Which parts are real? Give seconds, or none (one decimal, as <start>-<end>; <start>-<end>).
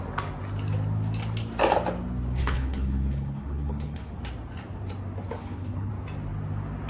0.0-2.4; 4.1-5.4; 5.9-6.9